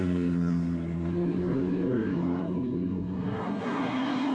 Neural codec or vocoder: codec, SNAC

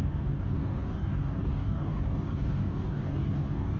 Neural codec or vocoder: codec, DAC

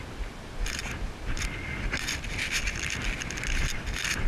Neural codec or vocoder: none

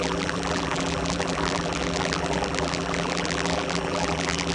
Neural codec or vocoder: vocoder, BigVGAN v2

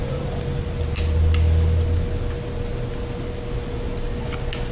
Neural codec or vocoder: none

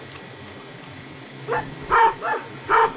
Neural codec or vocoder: none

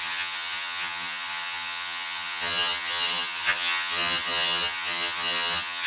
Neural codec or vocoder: vocoder, HiFi-GAN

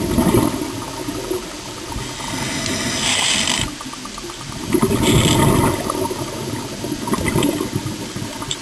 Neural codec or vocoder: none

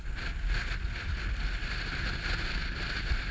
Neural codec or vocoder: none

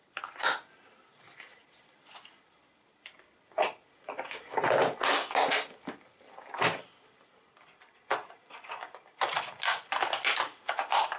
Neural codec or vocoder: none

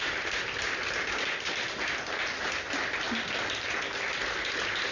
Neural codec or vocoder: none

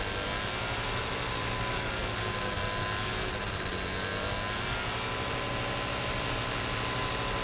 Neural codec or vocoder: none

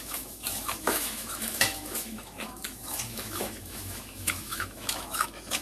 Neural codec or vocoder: autoencoder, DAC-VAE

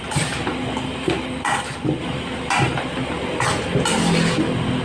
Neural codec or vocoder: none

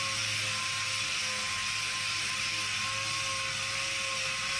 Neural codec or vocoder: none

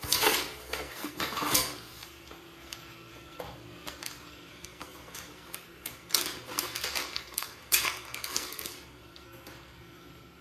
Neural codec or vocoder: codec, SNAC